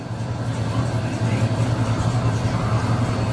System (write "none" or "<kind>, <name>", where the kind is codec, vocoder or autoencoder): none